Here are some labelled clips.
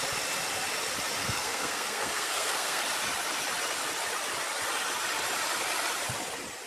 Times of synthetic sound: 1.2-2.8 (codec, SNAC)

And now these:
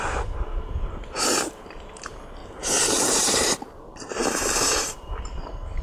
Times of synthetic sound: 0.0-2.4 (vocoder, BigVGAN v2); 3.0-5.8

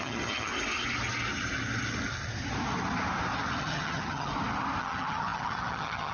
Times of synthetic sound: 0.0-0.5 (vocoder, HiFi-GAN); 3.6-4.3; 4.8-6.1

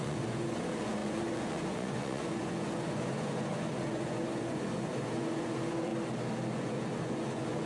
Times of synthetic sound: 0.0-5.9 (vocoder, Vocos); 6.5-7.7